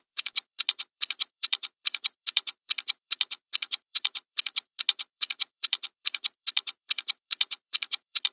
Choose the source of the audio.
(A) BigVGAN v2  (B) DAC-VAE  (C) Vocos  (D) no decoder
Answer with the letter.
C